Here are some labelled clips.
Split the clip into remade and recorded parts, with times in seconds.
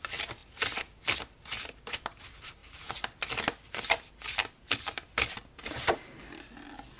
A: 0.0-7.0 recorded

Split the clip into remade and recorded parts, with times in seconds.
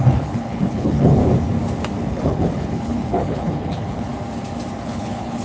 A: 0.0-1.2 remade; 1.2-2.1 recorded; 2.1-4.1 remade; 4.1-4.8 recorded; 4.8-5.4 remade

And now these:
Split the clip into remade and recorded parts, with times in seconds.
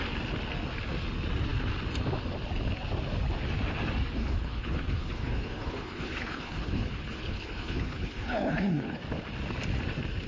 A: 0.0-4.2 recorded; 4.2-9.0 remade; 9.0-10.3 recorded